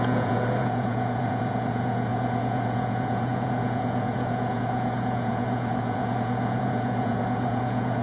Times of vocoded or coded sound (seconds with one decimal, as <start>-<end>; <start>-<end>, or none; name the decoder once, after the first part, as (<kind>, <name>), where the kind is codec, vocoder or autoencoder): 0.0-8.0 (vocoder, Vocos)